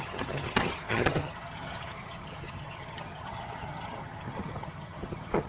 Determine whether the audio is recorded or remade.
remade